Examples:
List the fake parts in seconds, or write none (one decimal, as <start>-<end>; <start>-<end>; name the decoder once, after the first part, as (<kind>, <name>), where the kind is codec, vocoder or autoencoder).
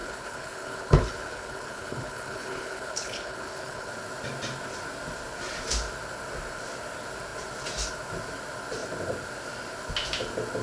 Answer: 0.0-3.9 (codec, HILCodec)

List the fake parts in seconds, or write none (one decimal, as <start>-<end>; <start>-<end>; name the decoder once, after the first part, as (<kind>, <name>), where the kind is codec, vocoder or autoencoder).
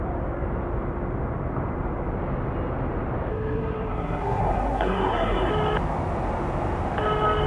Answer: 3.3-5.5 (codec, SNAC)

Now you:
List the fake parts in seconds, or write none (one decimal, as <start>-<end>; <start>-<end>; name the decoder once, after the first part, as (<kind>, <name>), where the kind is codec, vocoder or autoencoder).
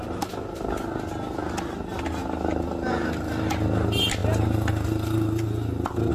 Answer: none